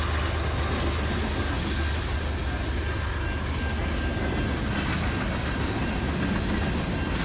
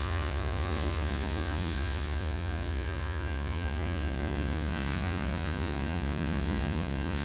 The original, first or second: first